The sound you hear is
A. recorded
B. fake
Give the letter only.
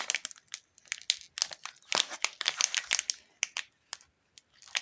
A